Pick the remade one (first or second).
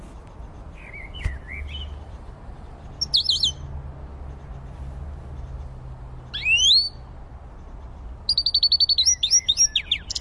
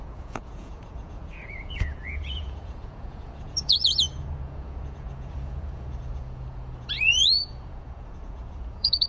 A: second